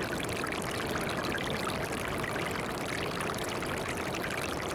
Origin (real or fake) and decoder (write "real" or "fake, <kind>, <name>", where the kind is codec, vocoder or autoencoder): real